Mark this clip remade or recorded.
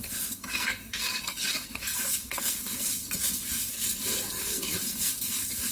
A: remade